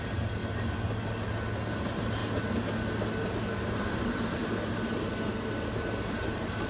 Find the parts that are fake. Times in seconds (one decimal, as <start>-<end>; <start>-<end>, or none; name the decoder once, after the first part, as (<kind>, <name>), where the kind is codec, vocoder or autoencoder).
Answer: 0.0-0.4 (vocoder, BigVGAN v2); 1.7-2.2; 3.7-4.4; 5.7-6.7